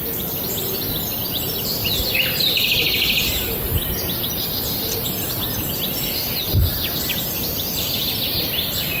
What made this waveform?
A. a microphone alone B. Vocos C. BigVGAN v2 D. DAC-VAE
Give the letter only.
A